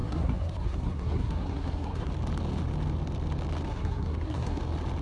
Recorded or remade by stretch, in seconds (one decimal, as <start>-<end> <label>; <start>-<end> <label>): 0.0-2.1 remade; 2.1-3.7 recorded; 3.7-4.6 remade; 4.6-5.0 recorded